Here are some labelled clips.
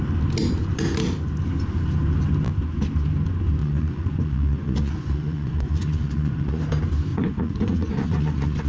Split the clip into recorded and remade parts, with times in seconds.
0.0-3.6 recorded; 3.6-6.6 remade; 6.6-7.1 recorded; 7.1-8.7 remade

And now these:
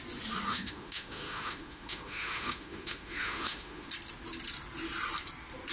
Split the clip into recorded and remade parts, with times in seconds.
0.0-0.5 recorded; 0.5-3.9 remade; 3.9-5.7 recorded

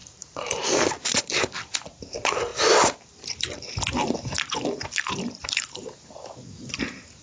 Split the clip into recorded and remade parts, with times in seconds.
0.0-7.2 remade